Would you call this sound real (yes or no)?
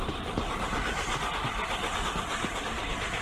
no